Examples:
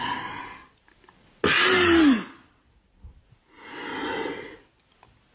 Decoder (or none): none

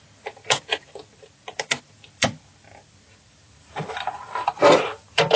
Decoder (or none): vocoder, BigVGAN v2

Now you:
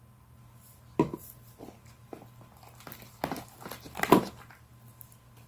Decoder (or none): none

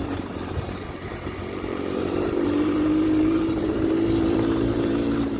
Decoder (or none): vocoder, BigVGAN v2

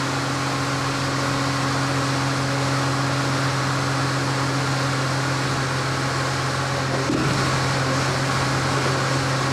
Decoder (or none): none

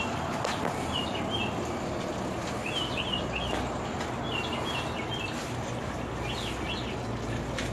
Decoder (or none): none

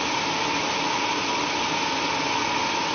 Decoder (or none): none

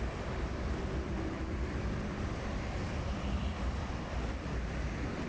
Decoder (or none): vocoder, BigVGAN v2